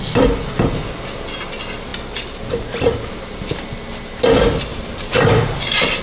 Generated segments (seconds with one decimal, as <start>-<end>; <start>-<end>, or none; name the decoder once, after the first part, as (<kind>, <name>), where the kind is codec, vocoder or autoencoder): 4.7-5.6 (vocoder, BigVGAN v2)